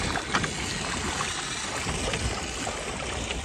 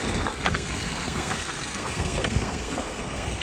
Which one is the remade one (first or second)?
second